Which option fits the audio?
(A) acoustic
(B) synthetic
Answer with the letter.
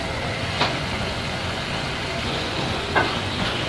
B